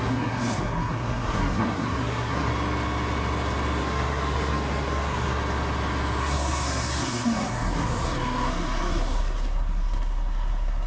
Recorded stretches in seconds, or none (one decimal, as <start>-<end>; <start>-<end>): 2.5-3.8; 5.4-6.2